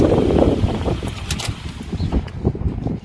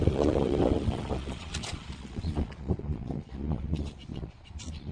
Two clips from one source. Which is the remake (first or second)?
second